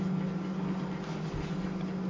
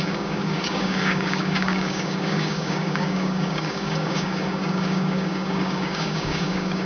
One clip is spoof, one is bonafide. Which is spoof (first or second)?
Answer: second